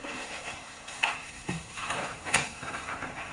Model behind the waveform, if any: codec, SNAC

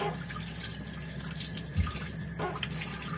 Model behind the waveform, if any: none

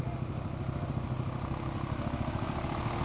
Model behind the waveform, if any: none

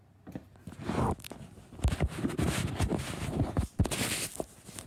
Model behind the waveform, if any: none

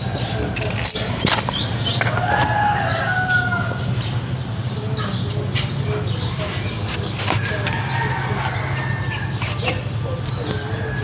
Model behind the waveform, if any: none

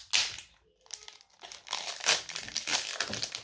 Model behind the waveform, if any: none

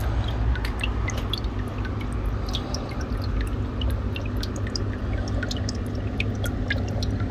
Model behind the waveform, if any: none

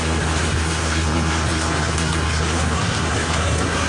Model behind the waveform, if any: codec, SNAC